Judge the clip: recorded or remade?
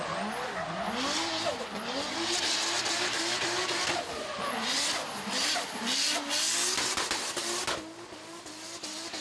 recorded